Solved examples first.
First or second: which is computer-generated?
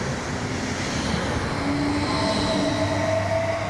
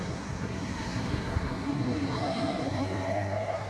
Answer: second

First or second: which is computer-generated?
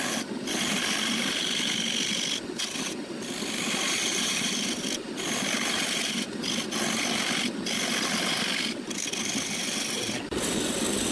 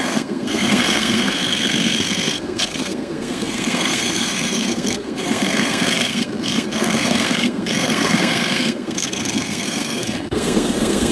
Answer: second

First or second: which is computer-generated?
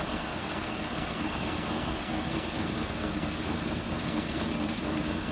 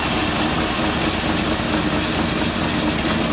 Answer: first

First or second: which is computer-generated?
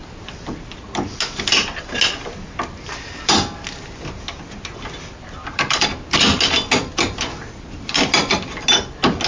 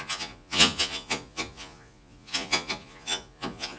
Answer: second